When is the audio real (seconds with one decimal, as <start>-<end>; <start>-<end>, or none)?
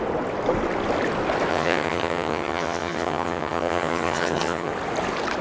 0.0-1.5; 4.7-5.4